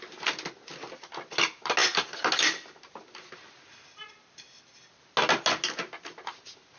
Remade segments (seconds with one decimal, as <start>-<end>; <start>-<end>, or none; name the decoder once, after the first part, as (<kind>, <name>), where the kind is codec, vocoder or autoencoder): none